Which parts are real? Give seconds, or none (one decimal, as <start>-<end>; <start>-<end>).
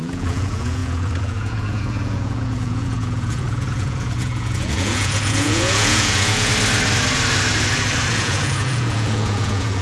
6.5-8.1